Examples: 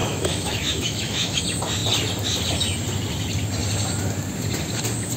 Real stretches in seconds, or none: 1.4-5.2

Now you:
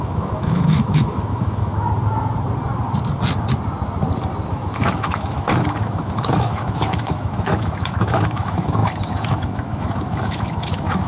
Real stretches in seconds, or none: 1.7-4.5

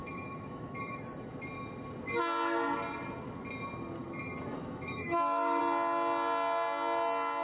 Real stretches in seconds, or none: 1.3-4.0; 5.6-7.4

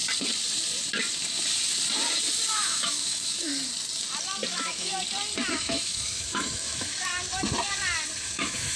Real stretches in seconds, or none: 0.0-2.5; 3.5-4.5; 4.9-5.5; 7.1-8.2

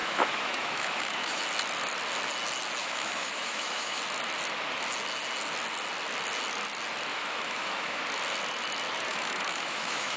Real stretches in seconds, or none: 1.4-2.8; 4.0-7.1; 8.0-9.1

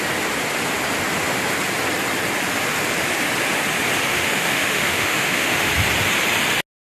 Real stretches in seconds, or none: 0.0-4.1; 5.7-6.9